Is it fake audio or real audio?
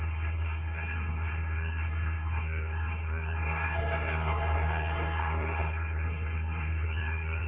fake